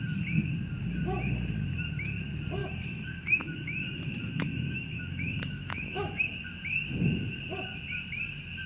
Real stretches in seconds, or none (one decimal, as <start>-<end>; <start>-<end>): 0.0-2.6; 6.2-8.7